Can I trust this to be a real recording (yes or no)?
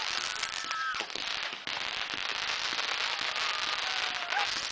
yes